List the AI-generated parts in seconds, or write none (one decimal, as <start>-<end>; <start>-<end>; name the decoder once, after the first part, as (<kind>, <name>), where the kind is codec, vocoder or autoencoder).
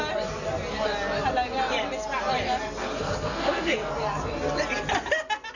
2.8-3.9 (codec, SNAC)